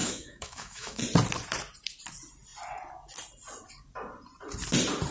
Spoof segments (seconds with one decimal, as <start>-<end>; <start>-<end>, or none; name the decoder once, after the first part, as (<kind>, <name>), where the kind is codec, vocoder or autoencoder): 0.0-1.0 (autoencoder, DAC-VAE)

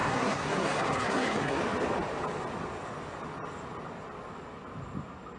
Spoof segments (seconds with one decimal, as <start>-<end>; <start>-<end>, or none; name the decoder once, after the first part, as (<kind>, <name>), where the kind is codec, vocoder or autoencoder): 0.0-1.6 (codec, SNAC)

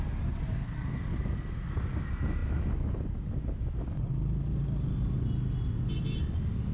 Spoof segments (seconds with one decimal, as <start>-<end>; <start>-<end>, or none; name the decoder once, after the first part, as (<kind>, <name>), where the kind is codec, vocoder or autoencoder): none